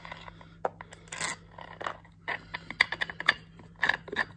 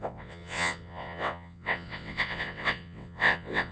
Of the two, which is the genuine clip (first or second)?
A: first